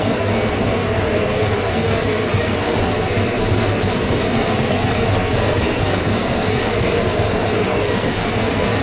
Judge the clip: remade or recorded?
remade